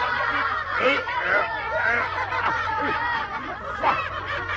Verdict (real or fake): fake